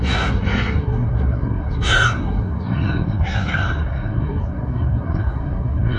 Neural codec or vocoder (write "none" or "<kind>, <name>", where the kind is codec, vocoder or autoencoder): codec, SNAC